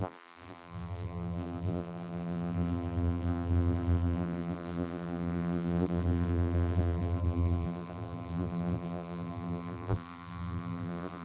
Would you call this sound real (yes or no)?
no